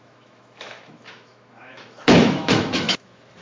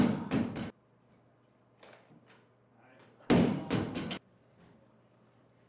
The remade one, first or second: first